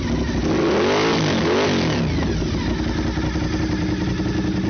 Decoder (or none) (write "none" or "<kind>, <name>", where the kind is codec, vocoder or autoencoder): none